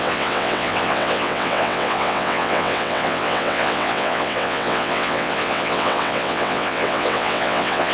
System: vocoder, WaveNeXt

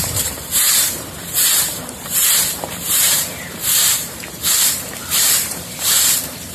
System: vocoder, BigVGAN v2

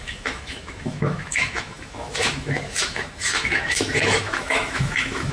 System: autoencoder, DAC-VAE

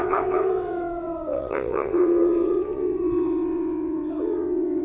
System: vocoder, WaveNeXt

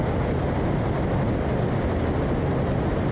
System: none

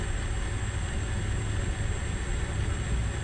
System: none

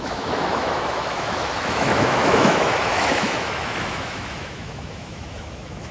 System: autoencoder, DAC-VAE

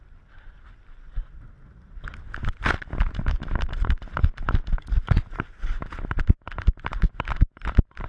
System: none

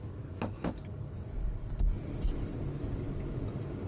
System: none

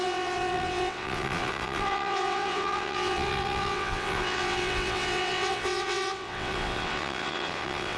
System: vocoder, WaveNeXt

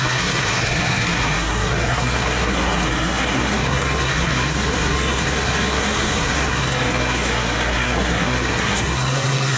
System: codec, SNAC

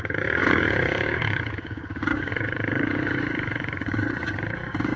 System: codec, DAC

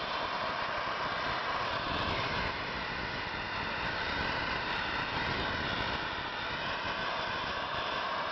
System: none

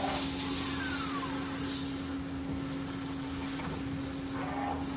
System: none